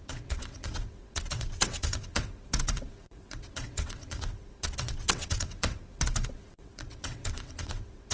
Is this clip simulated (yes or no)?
yes